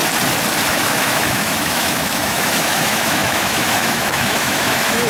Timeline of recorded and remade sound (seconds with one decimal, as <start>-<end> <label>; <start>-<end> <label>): 0.0-0.7 recorded; 0.7-5.1 remade